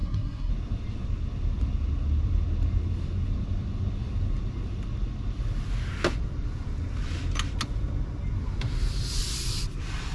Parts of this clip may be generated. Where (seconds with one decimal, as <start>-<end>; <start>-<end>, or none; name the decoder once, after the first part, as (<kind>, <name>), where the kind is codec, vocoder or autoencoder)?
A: 0.0-0.5 (codec, SNAC)